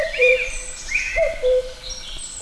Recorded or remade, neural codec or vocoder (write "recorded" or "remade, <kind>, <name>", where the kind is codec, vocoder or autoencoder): remade, vocoder, BigVGAN v2